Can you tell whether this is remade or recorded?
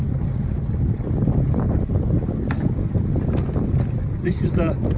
recorded